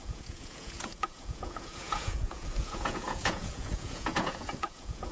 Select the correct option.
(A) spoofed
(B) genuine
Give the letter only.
A